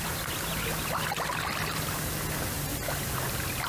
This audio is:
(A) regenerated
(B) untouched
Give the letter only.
B